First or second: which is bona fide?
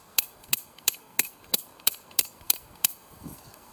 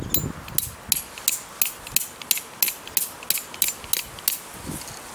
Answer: second